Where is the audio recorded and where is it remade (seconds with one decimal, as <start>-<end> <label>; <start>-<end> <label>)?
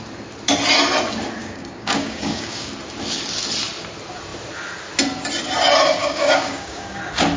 0.0-1.4 recorded; 1.4-2.7 remade; 2.7-6.0 recorded; 6.0-7.0 remade; 7.0-7.4 recorded